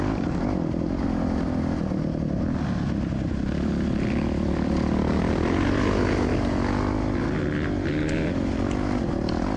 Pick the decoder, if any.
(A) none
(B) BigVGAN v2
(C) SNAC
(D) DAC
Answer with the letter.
A